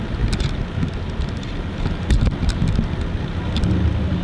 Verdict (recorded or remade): recorded